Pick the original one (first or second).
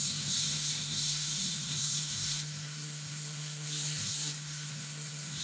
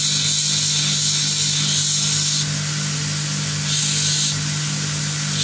second